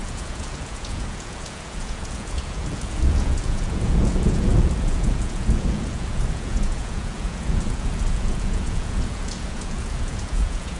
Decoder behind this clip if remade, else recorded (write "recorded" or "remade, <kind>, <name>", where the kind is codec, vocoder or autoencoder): remade, vocoder, Vocos